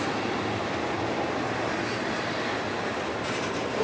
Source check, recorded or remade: recorded